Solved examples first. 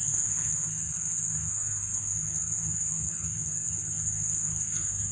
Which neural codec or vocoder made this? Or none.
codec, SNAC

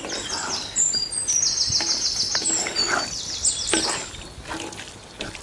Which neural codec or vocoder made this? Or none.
none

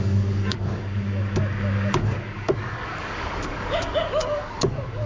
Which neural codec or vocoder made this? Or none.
codec, DAC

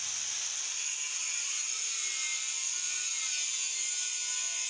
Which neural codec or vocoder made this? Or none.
none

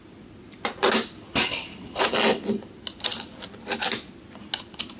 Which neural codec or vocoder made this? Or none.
none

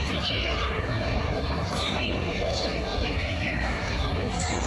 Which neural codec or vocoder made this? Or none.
codec, SNAC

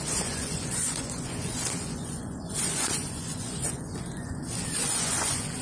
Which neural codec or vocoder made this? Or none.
vocoder, Vocos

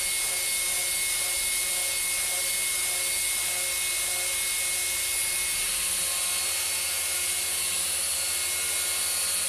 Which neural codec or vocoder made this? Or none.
none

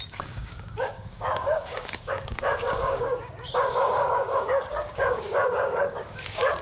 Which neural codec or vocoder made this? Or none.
codec, DAC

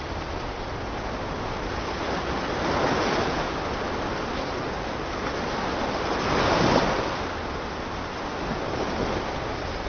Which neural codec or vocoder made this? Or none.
none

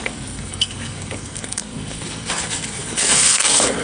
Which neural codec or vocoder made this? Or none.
codec, SNAC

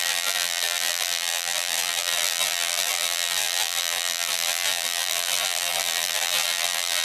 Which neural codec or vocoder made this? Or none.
vocoder, BigVGAN v2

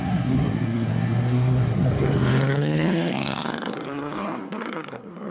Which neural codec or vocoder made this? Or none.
codec, SNAC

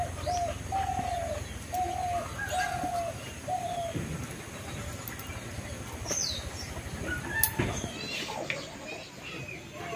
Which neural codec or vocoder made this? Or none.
none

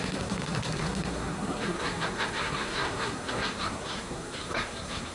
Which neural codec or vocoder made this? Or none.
codec, SNAC